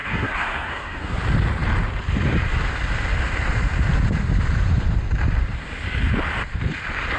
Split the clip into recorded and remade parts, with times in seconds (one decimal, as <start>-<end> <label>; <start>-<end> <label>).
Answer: 0.0-1.2 remade; 1.2-7.2 recorded